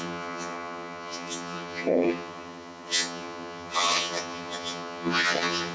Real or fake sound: fake